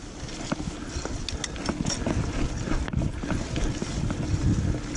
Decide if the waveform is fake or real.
real